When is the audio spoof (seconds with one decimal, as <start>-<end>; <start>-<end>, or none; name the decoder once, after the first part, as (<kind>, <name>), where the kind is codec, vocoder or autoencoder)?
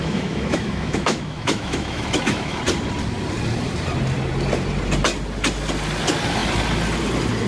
0.0-2.6 (autoencoder, DAC-VAE)